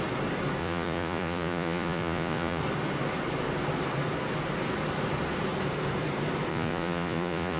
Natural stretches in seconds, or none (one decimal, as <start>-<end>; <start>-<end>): 0.0-0.6; 2.6-6.5